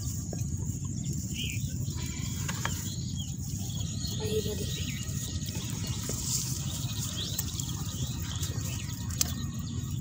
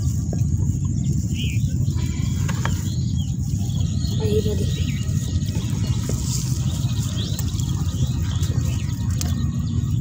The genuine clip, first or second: second